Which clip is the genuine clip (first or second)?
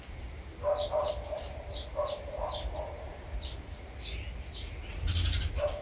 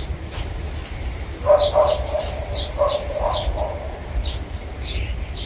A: first